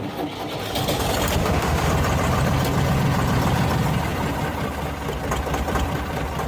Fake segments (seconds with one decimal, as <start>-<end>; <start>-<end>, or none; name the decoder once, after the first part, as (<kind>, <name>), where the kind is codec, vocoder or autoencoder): 1.4-1.9 (autoencoder, DAC-VAE)